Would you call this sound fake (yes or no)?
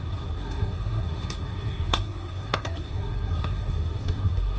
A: yes